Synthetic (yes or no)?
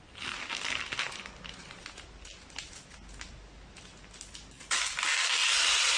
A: no